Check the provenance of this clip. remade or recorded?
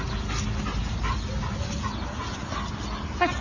recorded